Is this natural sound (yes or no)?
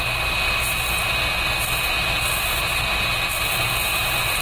yes